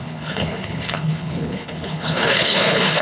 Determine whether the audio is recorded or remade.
remade